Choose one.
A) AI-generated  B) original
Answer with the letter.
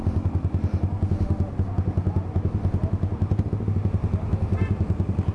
B